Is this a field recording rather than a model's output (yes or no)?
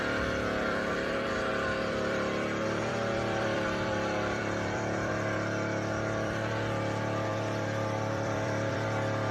no